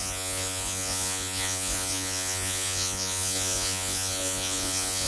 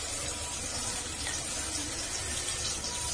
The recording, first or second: second